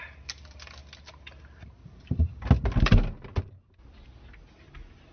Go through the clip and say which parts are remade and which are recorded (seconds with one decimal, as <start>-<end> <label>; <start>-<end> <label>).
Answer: 0.0-5.1 recorded